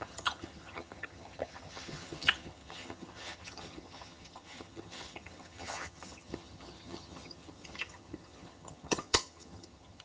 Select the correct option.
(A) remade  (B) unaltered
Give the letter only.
A